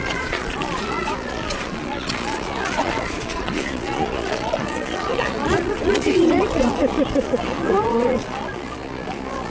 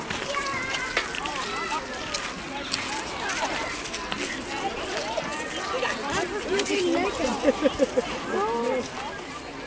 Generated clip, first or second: first